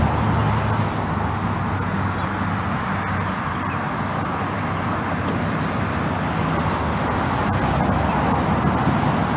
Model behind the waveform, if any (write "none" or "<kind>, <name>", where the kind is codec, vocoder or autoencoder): none